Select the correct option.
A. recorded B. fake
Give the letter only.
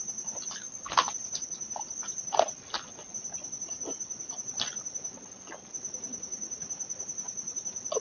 A